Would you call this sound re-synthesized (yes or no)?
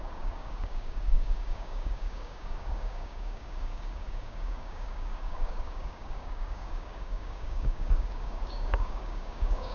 yes